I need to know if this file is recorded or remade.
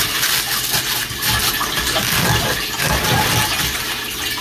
recorded